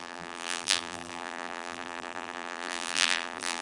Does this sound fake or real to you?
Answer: fake